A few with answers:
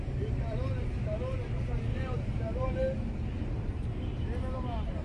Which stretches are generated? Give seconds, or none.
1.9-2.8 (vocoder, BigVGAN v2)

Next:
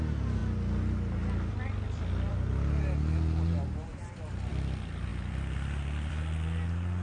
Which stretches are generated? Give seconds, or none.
none